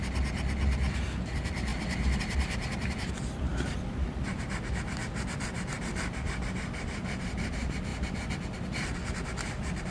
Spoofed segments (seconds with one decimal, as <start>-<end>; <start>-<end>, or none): 1.7-2.2; 3.5-6.9; 7.9-9.9